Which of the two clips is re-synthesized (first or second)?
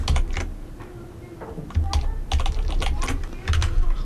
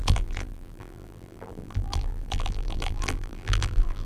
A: second